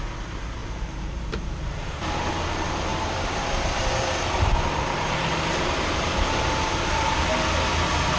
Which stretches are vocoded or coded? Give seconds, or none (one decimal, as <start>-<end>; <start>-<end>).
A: 0.6-2.3; 2.9-7.2